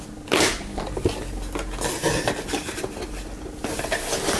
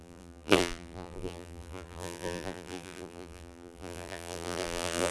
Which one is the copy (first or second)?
second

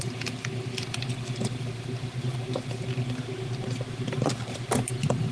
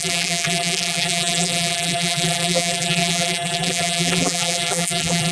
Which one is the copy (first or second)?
second